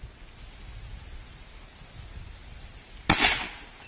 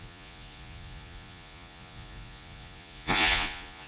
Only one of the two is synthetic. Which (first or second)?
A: second